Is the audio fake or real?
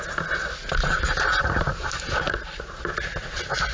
real